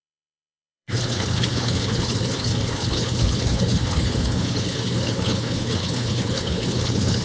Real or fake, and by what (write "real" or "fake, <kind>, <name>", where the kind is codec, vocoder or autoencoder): fake, codec, HILCodec